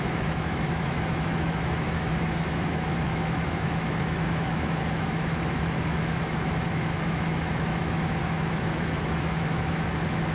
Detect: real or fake fake